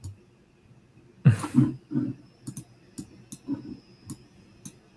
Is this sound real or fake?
real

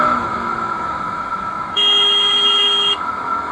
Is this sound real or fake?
fake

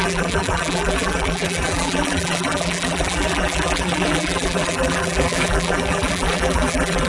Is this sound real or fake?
fake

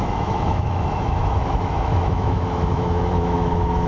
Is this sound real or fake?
fake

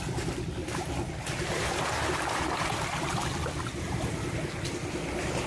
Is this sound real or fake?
real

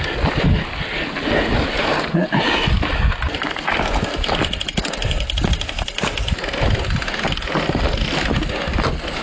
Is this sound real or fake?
real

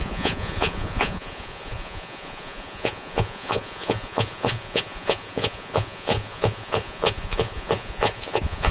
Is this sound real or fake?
fake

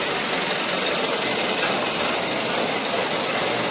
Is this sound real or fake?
real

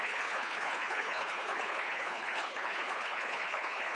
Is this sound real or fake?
fake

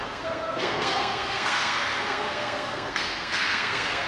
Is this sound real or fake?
fake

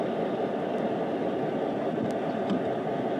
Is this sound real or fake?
real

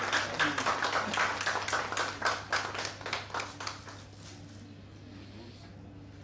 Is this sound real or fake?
real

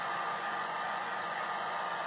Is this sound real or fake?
fake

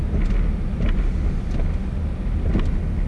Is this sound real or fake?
real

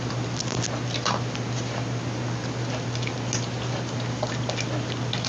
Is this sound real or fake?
real